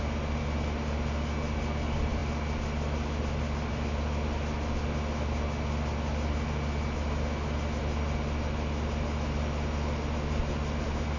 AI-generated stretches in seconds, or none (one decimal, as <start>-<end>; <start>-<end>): none